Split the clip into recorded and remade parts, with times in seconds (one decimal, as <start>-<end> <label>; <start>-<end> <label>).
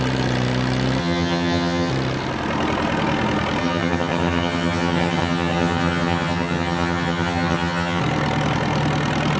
0.0-1.0 recorded; 1.0-1.9 remade; 1.9-3.6 recorded; 3.6-8.0 remade; 8.0-9.4 recorded